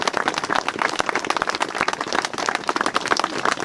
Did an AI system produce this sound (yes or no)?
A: no